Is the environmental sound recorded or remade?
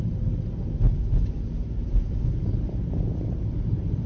recorded